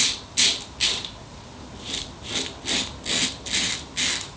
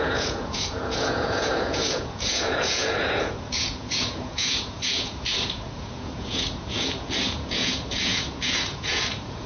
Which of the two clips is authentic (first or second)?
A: first